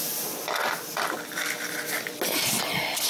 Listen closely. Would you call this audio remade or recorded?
recorded